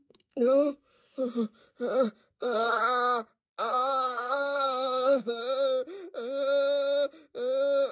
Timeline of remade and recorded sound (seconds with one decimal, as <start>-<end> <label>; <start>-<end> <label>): 0.0-1.2 remade; 1.2-2.3 recorded; 2.3-2.8 remade; 2.8-3.7 recorded; 3.7-5.4 remade; 5.4-7.9 recorded